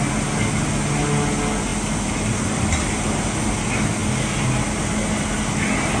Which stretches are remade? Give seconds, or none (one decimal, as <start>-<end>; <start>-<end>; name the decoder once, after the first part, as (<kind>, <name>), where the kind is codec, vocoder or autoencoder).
none